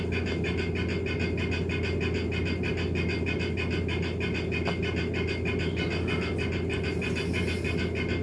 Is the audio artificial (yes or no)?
no